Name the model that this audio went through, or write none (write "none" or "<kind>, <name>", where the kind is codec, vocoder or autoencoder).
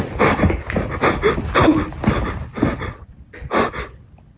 none